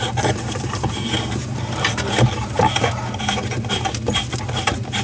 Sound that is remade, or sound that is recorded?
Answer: remade